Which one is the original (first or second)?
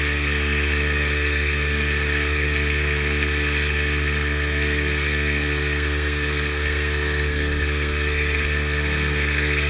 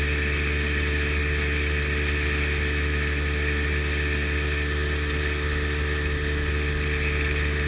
second